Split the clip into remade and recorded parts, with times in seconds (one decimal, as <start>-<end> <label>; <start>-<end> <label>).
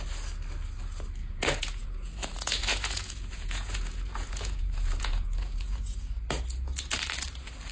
0.0-1.2 recorded; 1.2-5.8 remade; 5.8-7.7 recorded